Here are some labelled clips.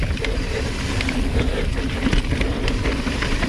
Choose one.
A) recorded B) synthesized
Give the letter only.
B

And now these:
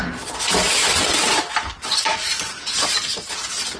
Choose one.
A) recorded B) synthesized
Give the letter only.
A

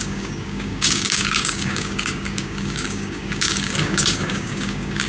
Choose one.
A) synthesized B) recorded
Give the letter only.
A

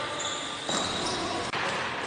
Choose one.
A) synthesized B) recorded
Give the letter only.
B